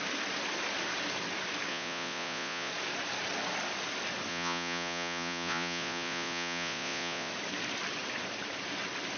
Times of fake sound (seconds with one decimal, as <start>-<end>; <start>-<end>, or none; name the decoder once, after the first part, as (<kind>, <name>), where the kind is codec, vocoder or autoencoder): 1.7-2.7 (vocoder, Vocos); 4.3-7.3